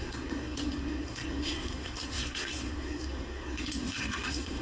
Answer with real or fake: fake